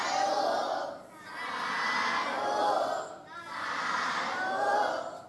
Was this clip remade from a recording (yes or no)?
no